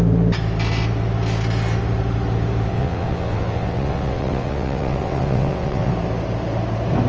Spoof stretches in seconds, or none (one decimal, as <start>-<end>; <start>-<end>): 2.7-5.9